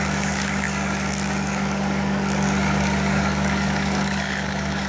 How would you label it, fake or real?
fake